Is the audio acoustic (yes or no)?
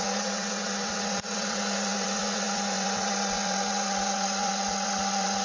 no